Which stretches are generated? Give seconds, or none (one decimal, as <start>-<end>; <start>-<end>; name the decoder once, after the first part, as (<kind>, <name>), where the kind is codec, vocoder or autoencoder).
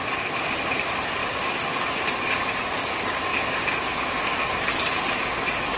none